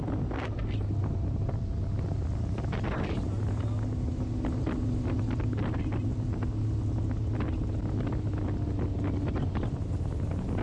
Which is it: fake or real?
real